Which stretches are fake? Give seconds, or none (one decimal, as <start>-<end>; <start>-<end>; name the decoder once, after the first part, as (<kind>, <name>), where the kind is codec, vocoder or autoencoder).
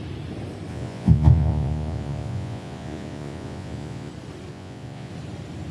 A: 0.7-4.1 (vocoder, Vocos); 4.5-5.1